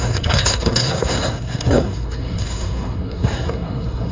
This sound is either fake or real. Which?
fake